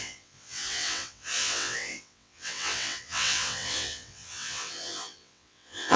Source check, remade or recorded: remade